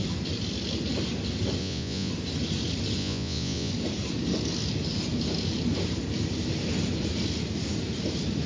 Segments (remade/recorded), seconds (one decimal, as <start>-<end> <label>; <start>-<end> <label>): 0.0-1.6 recorded; 1.6-2.1 remade; 2.1-3.0 recorded; 3.0-3.7 remade; 3.7-8.5 recorded